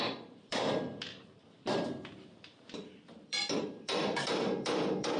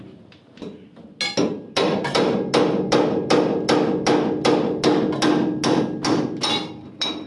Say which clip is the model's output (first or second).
first